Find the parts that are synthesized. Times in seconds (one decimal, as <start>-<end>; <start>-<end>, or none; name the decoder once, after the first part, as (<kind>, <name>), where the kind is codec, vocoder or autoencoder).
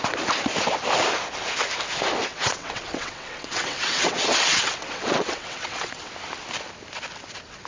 2.3-6.1 (vocoder, WaveNeXt)